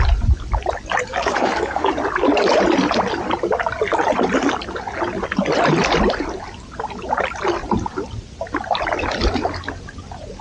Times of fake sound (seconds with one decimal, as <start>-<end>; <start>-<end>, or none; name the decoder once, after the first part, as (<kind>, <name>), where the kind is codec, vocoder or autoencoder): 1.1-1.9 (codec, DAC)